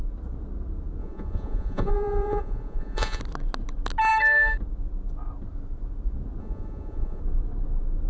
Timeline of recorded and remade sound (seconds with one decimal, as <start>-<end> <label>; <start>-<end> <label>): 0.0-1.0 recorded; 1.0-3.2 remade; 3.2-6.4 recorded; 6.4-7.2 remade; 7.2-8.1 recorded